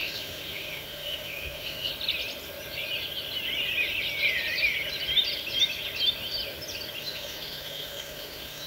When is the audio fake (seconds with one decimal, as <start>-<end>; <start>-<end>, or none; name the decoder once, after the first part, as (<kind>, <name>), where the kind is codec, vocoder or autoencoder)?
0.0-1.9 (autoencoder, DAC-VAE); 7.0-8.7